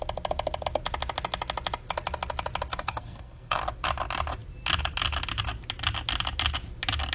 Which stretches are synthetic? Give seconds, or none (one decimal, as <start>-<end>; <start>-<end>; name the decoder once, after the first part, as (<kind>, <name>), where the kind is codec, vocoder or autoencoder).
2.7-3.6 (codec, SNAC)